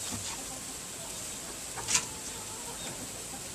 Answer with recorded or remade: recorded